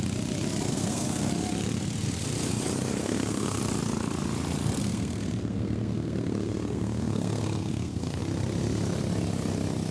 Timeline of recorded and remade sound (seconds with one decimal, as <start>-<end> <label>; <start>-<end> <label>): 0.0-0.7 recorded; 0.7-1.3 remade; 1.3-3.0 recorded; 3.0-3.6 remade; 3.6-4.8 recorded; 4.8-8.2 remade; 8.2-9.9 recorded

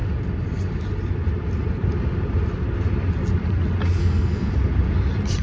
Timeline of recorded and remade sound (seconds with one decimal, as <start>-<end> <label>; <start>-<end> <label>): 0.0-4.0 recorded; 4.0-4.5 remade; 4.5-5.4 recorded